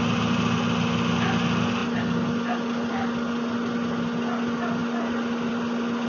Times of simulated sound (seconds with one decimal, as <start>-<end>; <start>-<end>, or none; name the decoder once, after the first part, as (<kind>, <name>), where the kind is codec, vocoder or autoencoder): none